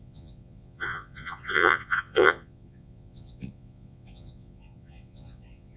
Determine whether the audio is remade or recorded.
remade